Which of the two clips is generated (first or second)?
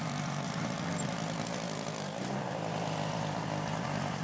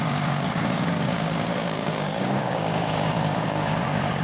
second